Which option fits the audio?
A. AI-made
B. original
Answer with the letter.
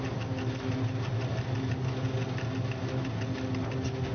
B